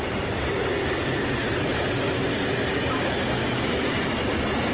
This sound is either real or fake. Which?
real